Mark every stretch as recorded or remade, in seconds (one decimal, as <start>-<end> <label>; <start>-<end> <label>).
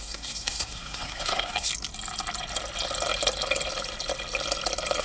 0.0-1.7 remade; 1.7-5.0 recorded